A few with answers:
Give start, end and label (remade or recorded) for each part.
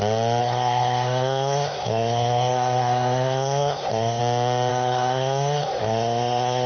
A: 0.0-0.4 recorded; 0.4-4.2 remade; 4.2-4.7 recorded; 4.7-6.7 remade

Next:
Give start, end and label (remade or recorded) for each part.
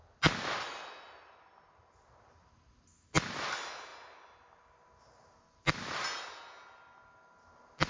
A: 0.0-7.9 recorded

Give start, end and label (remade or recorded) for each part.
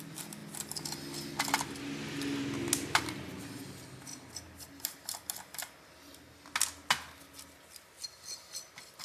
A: 0.0-9.0 recorded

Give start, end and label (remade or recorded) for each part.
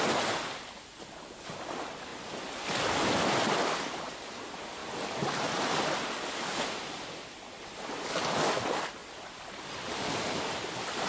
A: 0.0-11.1 recorded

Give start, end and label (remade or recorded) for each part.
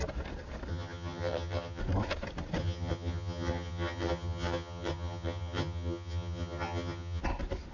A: 0.0-0.7 recorded; 0.7-1.8 remade; 1.8-2.6 recorded; 2.6-7.2 remade; 7.2-7.7 recorded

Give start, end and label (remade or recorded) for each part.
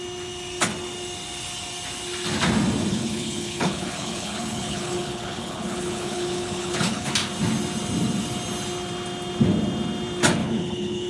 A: 0.0-2.9 recorded; 2.9-7.1 remade; 7.1-10.4 recorded; 10.4-11.1 remade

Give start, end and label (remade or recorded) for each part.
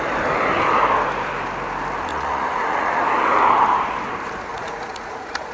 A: 0.0-2.1 recorded; 2.1-3.0 remade; 3.0-4.5 recorded; 4.5-5.5 remade